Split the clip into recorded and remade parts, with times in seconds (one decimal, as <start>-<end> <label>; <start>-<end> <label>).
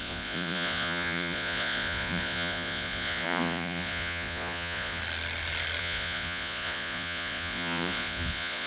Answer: 0.0-5.0 remade; 5.0-5.8 recorded; 5.8-8.7 remade